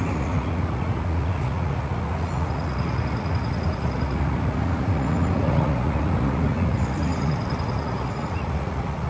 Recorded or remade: remade